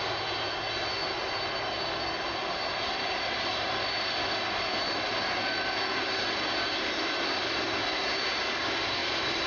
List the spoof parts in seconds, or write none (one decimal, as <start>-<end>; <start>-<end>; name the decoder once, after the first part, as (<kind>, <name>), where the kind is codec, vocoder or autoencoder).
none